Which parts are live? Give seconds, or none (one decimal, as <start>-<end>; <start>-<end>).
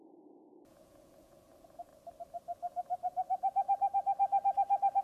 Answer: 1.9-5.0